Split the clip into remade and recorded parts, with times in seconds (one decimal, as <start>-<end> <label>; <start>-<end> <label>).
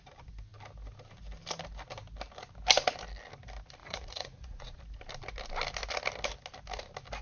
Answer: 0.0-3.8 recorded; 3.8-4.8 remade; 4.8-7.2 recorded